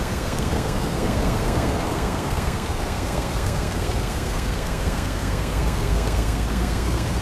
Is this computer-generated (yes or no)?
yes